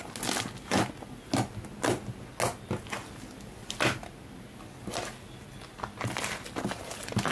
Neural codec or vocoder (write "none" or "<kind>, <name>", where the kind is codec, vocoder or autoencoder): none